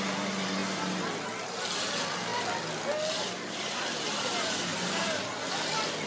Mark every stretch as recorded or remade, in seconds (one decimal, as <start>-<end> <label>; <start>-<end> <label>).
0.0-2.3 remade; 2.3-3.1 recorded; 3.1-6.1 remade